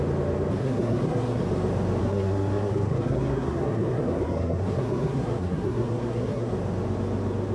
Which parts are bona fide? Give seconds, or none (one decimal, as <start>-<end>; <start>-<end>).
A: 0.0-0.6; 1.4-2.0; 6.5-7.5